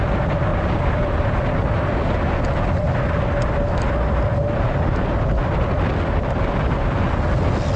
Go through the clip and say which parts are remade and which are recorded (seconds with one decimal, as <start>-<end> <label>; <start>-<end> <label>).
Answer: 0.0-0.5 recorded; 0.5-1.3 remade; 1.3-7.8 recorded

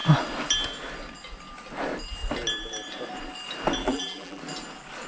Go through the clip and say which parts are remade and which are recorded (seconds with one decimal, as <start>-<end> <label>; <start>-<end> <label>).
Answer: 0.0-3.8 recorded; 3.8-4.4 remade; 4.4-5.1 recorded

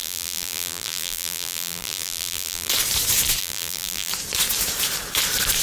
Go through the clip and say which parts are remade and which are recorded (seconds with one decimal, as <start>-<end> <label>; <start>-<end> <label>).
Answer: 0.0-2.7 remade; 2.7-3.4 recorded; 3.4-4.1 remade; 4.1-5.6 recorded

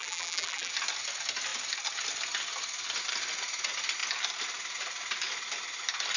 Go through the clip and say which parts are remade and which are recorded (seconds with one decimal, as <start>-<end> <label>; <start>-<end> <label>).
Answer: 0.0-0.7 remade; 0.7-6.2 recorded

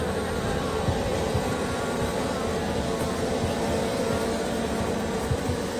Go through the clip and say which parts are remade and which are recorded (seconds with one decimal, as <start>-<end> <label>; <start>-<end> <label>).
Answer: 0.0-5.8 recorded

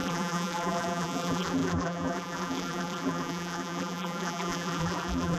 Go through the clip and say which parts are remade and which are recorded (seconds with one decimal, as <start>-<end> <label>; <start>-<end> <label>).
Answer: 0.0-5.4 remade

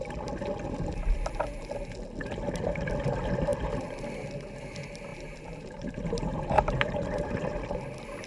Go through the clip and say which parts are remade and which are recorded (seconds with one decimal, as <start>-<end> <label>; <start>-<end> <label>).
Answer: 0.0-5.1 recorded; 5.1-7.6 remade; 7.6-8.3 recorded

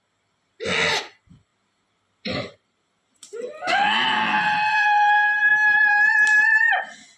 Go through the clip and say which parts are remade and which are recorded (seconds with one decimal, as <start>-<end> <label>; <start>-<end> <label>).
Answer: 0.0-1.5 recorded; 1.5-5.5 remade; 5.5-7.2 recorded